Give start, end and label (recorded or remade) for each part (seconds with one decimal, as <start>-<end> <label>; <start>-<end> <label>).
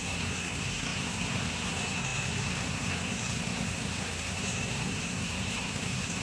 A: 0.0-6.2 remade